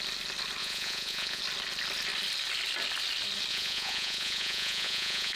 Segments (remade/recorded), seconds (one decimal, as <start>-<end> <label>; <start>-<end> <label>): 0.0-0.6 recorded; 0.6-1.4 remade; 1.4-3.5 recorded; 3.5-5.4 remade